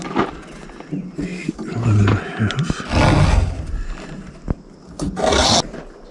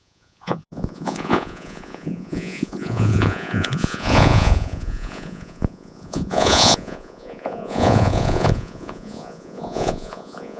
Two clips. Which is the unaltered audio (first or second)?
first